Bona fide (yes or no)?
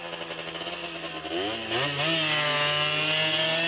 yes